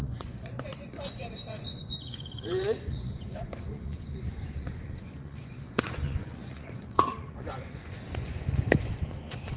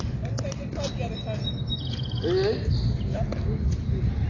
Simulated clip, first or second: first